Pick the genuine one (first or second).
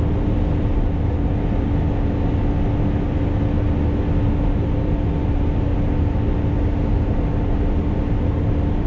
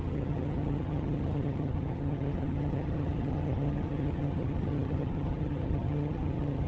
first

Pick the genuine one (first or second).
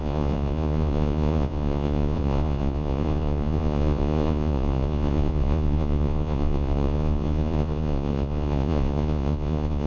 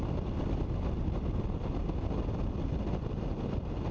second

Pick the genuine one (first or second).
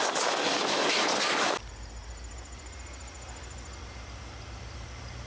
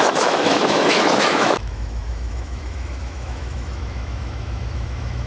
first